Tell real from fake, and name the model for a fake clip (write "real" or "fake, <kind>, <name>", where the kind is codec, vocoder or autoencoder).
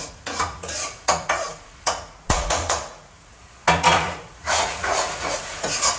fake, vocoder, Vocos